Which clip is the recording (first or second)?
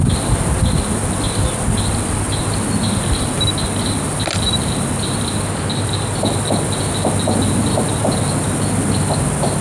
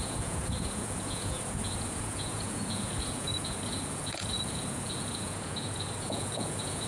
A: first